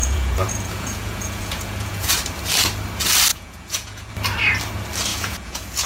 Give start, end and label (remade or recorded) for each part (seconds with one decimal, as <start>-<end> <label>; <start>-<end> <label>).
0.0-2.1 remade; 2.1-3.3 recorded; 3.3-4.1 remade; 4.1-5.1 recorded; 5.1-5.9 remade